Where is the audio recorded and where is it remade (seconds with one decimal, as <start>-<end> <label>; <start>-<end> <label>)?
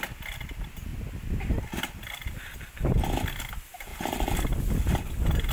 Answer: 0.0-5.5 recorded